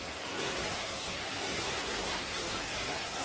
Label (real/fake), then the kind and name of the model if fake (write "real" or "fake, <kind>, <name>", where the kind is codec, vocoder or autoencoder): fake, codec, SNAC